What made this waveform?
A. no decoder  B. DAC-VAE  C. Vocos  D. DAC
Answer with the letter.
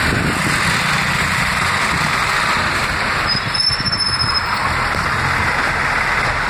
A